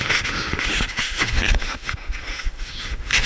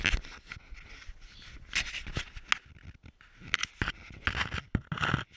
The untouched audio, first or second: second